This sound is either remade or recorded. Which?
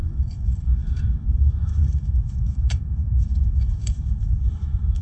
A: remade